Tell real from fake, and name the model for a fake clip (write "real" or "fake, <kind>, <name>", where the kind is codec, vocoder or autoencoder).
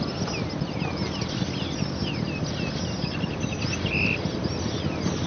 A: real